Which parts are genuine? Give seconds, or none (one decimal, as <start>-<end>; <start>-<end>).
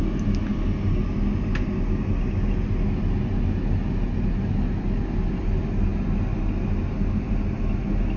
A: 0.0-8.2